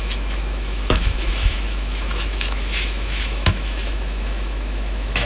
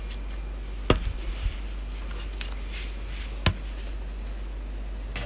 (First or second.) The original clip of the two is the second